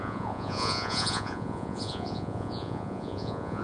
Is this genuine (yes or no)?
no